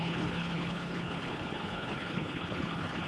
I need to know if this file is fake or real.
fake